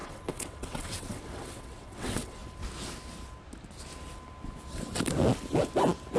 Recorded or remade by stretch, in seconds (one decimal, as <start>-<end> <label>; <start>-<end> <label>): 0.0-2.4 remade; 2.4-6.2 recorded